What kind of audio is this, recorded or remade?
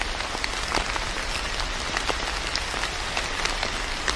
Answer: recorded